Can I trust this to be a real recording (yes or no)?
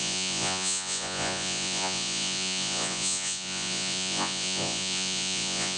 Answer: no